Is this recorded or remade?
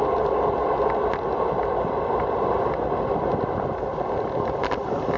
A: recorded